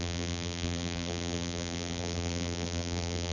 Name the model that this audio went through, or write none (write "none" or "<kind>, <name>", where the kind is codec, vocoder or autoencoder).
vocoder, BigVGAN v2